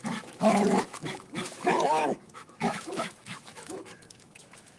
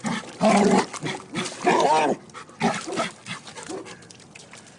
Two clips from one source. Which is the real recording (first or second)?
second